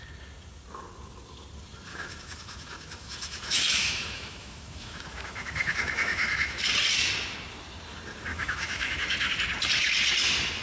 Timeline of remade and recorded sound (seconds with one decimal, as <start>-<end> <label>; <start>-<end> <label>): 0.0-1.9 recorded; 1.9-6.6 remade; 6.6-8.3 recorded; 8.3-9.3 remade; 9.3-10.6 recorded

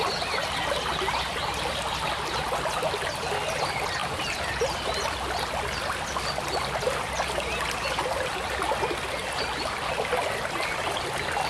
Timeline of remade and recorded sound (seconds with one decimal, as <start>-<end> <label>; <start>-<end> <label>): 0.0-11.5 recorded

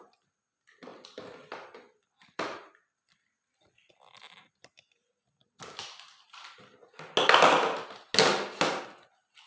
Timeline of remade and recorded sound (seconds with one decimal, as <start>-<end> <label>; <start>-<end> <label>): 0.0-0.9 recorded; 0.9-3.9 remade; 3.9-9.5 recorded

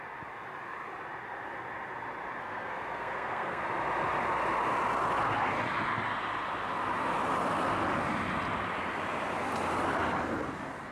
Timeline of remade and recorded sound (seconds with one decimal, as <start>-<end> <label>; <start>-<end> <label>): 0.0-2.4 recorded; 2.4-3.6 remade; 3.6-10.9 recorded

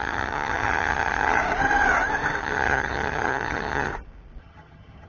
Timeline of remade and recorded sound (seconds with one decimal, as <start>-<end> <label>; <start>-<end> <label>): 0.0-1.4 remade; 1.4-2.4 recorded; 2.4-3.9 remade; 3.9-4.4 recorded; 4.4-5.1 remade

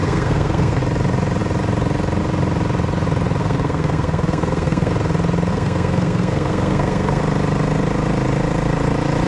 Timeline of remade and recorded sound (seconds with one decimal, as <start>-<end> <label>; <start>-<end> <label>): 0.0-0.8 remade; 0.8-3.4 recorded; 3.4-4.9 remade; 4.9-5.5 recorded; 5.5-7.2 remade; 7.2-9.3 recorded